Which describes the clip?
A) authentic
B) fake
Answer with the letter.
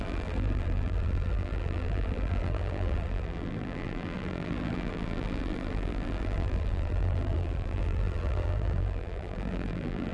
B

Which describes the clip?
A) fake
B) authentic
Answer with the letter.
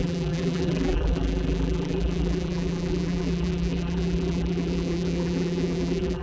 A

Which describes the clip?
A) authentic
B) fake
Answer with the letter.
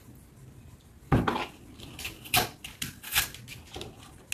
A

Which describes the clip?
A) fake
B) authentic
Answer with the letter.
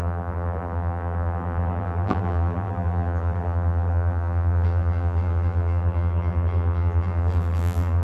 A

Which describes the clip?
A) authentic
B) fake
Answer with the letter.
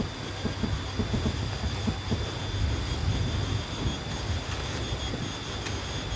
A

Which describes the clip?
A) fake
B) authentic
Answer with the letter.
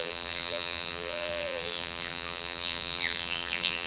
A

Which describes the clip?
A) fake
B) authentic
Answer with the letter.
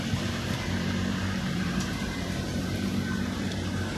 A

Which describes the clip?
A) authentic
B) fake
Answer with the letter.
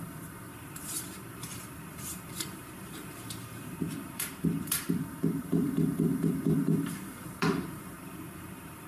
B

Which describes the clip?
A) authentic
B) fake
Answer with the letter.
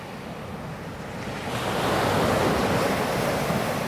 A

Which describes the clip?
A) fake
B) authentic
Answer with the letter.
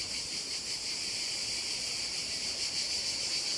A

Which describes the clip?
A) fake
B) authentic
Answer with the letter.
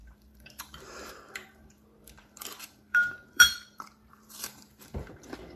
A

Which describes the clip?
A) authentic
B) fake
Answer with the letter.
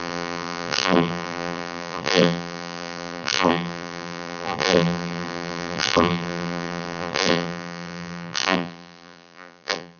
B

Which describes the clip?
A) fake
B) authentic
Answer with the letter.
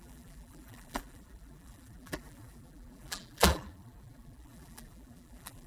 A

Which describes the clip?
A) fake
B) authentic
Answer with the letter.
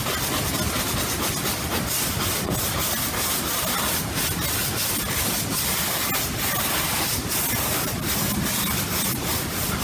B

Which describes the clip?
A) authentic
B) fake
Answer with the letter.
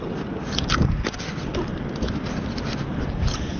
B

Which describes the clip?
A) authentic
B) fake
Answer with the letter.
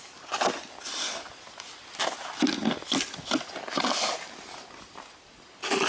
A